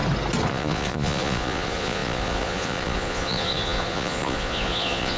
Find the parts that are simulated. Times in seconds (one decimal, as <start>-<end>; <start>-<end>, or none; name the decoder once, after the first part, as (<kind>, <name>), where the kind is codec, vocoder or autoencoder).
0.5-5.2 (vocoder, Vocos)